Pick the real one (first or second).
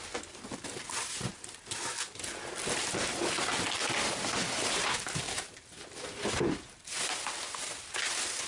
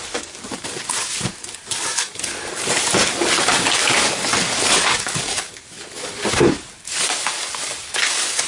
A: first